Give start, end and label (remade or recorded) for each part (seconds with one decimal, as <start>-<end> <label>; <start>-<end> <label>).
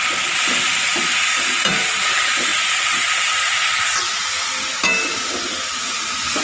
0.0-6.4 recorded